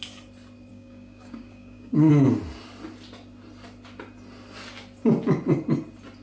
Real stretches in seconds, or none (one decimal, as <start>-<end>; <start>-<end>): 0.0-0.7; 2.1-6.2